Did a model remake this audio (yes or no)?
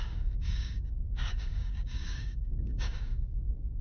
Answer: yes